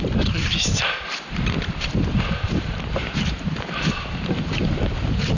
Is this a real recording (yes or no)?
no